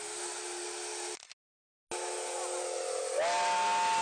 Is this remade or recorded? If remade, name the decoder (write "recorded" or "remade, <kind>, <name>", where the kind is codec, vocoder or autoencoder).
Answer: recorded